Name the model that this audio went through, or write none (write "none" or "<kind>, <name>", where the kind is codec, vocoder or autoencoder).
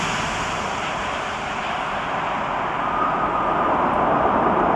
none